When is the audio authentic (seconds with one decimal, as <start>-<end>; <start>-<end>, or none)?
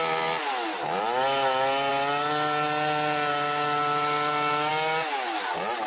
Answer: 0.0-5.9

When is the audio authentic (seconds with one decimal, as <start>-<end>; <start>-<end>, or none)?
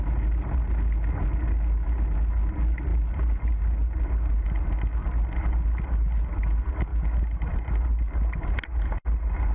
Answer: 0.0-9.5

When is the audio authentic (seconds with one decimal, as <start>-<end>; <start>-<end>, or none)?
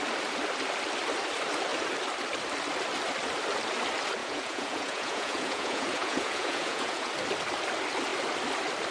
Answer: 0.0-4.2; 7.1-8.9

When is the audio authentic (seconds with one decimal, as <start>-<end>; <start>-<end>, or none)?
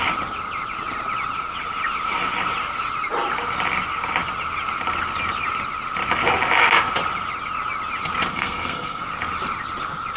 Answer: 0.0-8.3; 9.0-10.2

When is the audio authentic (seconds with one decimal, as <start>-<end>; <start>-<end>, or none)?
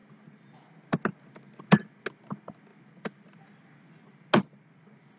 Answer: 0.0-5.2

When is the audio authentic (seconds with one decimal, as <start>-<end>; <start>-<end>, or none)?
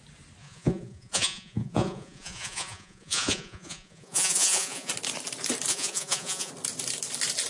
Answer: 0.0-0.4; 4.9-5.7; 6.5-7.5